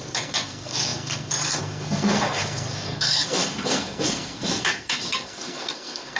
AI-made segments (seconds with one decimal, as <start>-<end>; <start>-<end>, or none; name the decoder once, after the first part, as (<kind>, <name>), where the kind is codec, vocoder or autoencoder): 0.0-6.2 (codec, SNAC)